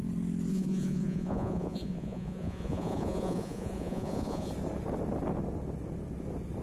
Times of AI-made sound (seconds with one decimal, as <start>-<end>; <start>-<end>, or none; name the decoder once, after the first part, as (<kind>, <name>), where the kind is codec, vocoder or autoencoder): 0.5-4.5 (vocoder, Vocos)